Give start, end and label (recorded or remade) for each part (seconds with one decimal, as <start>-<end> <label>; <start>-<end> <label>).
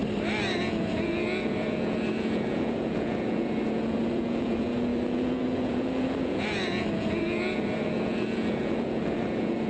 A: 0.0-0.6 recorded; 0.6-9.7 remade